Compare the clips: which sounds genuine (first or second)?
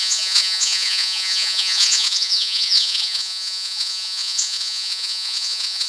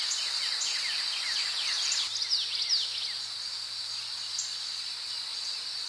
second